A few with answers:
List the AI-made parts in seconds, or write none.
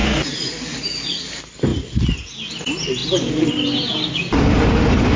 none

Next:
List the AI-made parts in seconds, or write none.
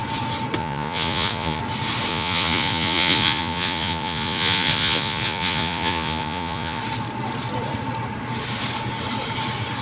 0.6-1.6; 2.1-6.8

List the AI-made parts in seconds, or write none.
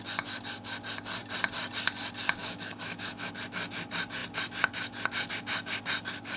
2.4-3.3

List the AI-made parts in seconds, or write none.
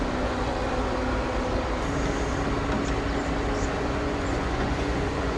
0.0-0.5; 3.7-5.4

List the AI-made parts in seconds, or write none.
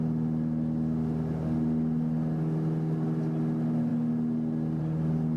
none